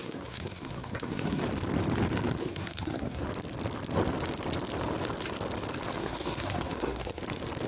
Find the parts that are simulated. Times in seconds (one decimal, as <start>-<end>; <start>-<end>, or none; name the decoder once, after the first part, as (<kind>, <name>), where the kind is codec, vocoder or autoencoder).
0.0-1.4 (codec, SNAC); 2.4-3.2; 6.0-7.2